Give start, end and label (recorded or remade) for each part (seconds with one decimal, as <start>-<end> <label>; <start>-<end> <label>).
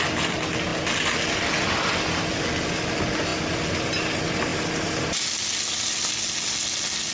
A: 0.0-7.1 recorded